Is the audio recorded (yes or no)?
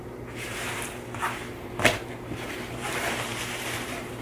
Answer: no